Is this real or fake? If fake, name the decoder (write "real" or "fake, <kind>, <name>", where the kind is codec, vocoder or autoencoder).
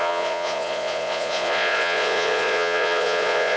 fake, vocoder, Vocos